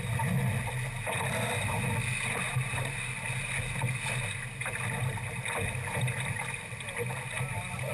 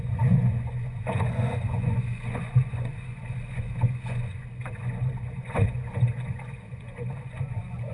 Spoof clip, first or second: second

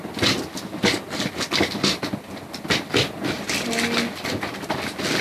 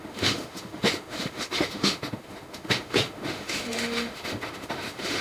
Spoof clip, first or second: second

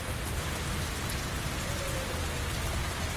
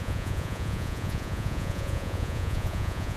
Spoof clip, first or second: second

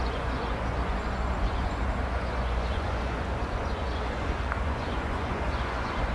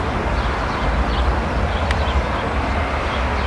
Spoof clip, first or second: first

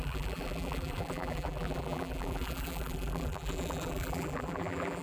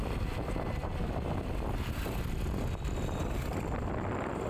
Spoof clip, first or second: first